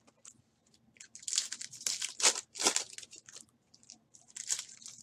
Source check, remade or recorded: recorded